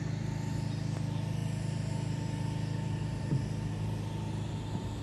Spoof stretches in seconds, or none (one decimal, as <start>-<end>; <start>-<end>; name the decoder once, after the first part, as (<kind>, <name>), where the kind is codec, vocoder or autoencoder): none